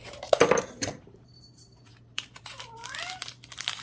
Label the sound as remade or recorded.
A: remade